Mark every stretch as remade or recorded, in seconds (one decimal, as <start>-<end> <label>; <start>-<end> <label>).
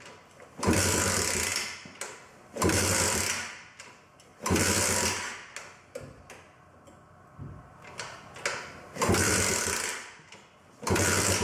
0.0-1.5 recorded; 1.5-2.9 remade; 2.9-11.4 recorded